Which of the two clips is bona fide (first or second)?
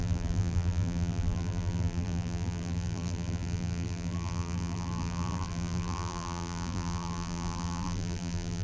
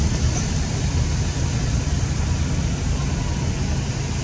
second